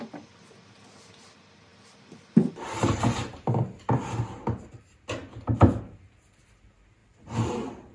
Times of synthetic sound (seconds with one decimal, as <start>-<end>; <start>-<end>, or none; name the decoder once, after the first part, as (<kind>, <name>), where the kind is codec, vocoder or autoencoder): 1.7-3.8 (vocoder, BigVGAN v2); 7.0-7.5